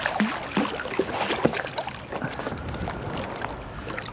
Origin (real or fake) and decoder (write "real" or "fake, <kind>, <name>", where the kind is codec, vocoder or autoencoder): real